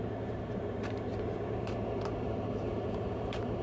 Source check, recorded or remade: remade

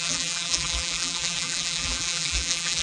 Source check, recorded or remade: remade